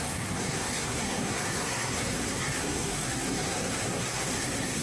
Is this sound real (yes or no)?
no